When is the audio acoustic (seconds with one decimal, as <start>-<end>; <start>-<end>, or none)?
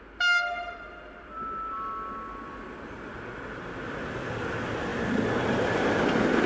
0.0-6.5